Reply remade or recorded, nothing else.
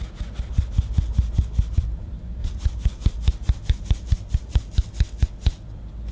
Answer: recorded